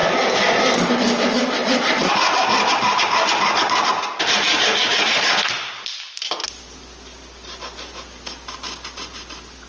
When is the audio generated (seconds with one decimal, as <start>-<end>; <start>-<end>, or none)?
4.5-5.8